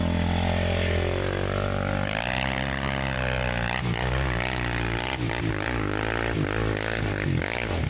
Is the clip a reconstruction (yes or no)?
no